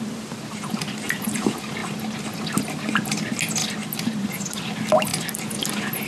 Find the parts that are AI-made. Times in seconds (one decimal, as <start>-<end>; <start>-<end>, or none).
none